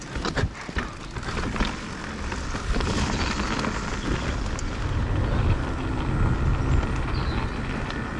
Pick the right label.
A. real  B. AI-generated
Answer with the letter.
A